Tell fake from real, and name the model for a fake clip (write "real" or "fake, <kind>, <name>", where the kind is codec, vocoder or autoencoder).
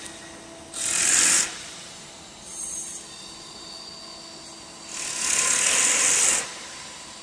real